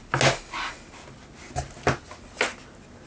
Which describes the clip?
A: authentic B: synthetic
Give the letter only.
A